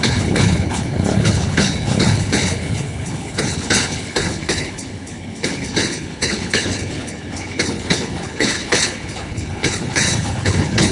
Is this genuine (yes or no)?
no